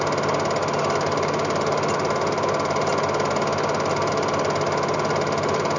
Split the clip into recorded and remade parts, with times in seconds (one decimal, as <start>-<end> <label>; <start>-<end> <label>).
0.0-5.8 recorded